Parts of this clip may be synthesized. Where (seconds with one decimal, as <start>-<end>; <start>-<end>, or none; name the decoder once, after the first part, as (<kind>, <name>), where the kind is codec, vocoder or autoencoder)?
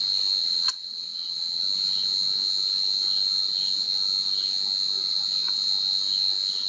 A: 0.4-1.6 (vocoder, WaveNeXt)